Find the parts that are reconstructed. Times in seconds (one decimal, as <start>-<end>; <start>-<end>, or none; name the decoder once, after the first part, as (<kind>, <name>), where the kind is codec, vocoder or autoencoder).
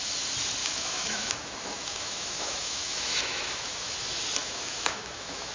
0.6-3.9 (autoencoder, DAC-VAE); 4.4-5.5